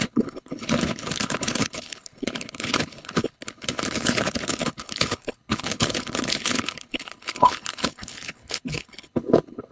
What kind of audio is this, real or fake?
fake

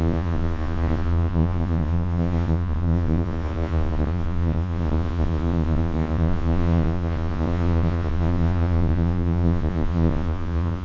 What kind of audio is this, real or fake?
fake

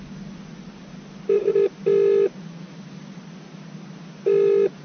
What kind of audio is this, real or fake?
real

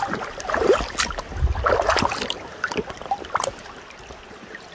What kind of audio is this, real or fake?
real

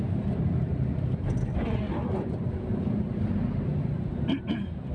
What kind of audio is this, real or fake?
real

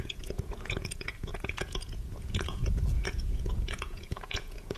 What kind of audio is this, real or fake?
fake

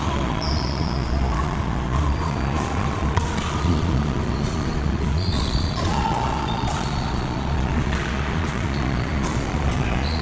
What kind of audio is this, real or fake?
fake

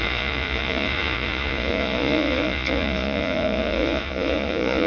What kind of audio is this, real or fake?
fake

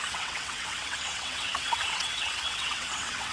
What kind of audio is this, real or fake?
fake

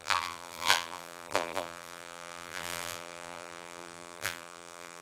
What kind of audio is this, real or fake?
fake